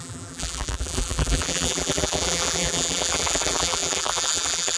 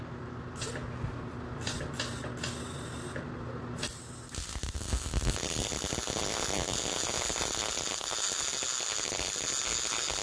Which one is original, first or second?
second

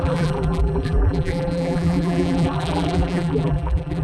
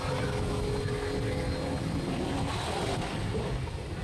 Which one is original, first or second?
second